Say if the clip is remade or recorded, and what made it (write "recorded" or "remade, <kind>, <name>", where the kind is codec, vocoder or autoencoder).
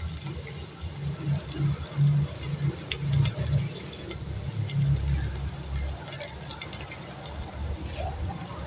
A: recorded